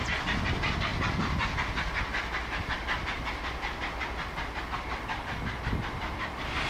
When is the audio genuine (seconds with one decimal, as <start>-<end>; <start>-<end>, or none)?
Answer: 0.0-6.7